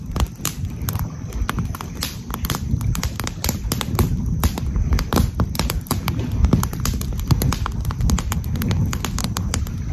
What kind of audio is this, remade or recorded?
recorded